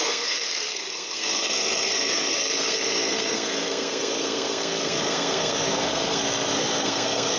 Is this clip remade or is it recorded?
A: remade